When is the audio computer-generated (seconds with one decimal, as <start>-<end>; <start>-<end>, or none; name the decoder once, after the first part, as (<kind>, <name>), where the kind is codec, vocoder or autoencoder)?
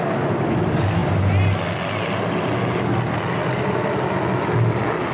none